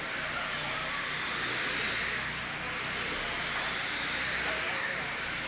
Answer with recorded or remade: recorded